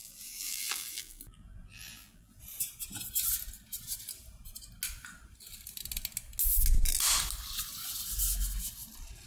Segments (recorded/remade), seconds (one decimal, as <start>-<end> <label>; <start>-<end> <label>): 0.0-2.4 remade; 2.4-9.3 recorded